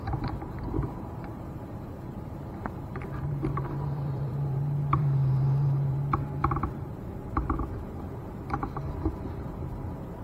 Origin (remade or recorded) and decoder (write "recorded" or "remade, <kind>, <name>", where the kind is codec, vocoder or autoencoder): remade, vocoder, BigVGAN v2